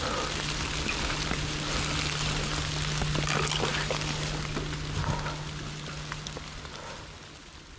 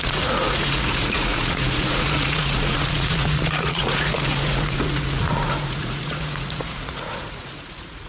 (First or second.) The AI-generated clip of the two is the second